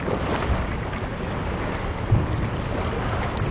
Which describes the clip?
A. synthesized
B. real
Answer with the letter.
B